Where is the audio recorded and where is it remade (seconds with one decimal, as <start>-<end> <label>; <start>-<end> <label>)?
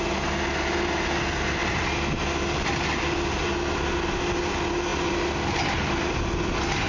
0.0-6.9 recorded